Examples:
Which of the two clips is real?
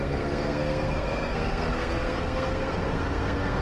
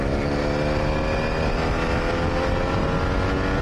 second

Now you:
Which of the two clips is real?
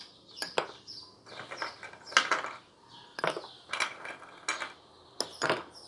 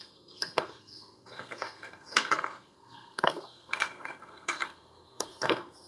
first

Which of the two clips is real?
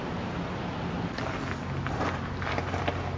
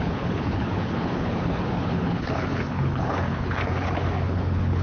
first